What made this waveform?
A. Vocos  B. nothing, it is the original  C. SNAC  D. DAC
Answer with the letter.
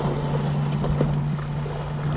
B